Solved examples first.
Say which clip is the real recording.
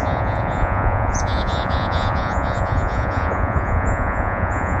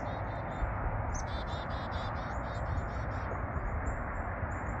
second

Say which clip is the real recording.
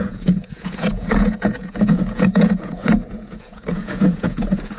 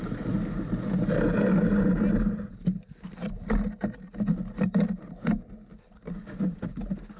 second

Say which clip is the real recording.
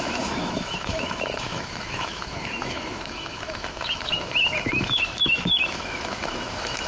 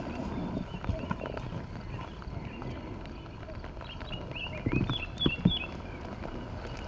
second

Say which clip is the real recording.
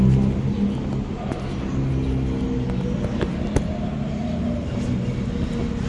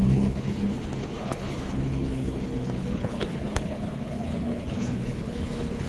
first